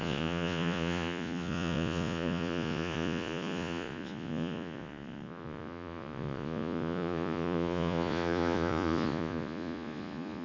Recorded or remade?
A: remade